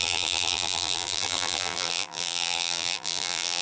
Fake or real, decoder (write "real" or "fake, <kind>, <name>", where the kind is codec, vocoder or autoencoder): fake, vocoder, BigVGAN v2